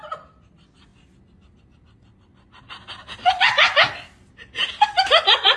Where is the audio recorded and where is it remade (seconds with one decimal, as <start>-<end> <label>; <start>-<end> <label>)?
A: 0.0-5.6 recorded

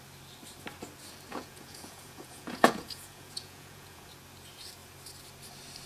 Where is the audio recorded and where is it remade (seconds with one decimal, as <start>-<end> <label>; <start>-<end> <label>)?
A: 0.0-1.3 recorded; 1.3-4.1 remade; 4.1-5.9 recorded

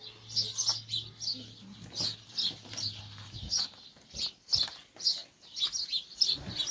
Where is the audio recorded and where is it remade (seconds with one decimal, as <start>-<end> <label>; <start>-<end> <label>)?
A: 0.0-6.7 recorded

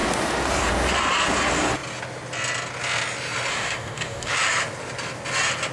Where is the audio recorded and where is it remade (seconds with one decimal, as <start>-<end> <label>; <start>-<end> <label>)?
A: 0.0-3.5 recorded; 3.5-4.3 remade; 4.3-5.7 recorded

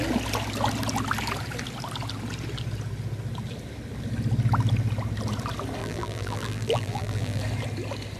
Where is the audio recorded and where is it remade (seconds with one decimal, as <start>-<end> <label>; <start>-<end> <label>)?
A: 0.0-5.8 recorded; 5.8-7.4 remade; 7.4-8.2 recorded

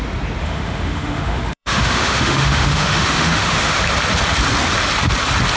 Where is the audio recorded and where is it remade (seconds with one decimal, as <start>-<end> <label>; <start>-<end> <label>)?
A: 0.0-0.4 recorded; 0.4-3.8 remade; 3.8-5.6 recorded

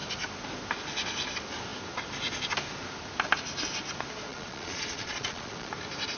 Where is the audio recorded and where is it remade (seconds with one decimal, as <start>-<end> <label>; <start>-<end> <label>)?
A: 0.0-4.3 recorded; 4.3-5.7 remade; 5.7-6.2 recorded